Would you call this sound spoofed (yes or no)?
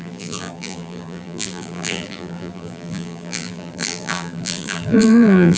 yes